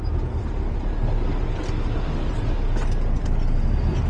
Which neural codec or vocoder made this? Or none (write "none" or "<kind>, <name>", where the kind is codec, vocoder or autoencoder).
none